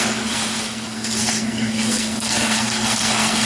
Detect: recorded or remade remade